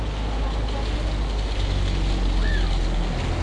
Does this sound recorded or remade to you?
recorded